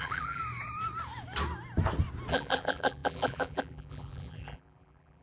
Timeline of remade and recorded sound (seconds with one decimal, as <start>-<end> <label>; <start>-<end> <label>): 0.0-0.4 remade; 0.4-2.3 recorded; 2.3-5.2 remade